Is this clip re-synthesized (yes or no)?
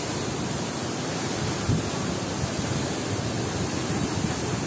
no